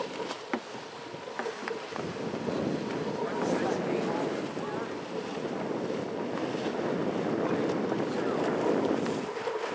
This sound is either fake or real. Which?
real